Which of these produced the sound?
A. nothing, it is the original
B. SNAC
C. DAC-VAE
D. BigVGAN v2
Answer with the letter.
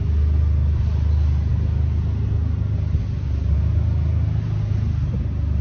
A